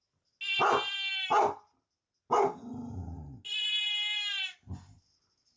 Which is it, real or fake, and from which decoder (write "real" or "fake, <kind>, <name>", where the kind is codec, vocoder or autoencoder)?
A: real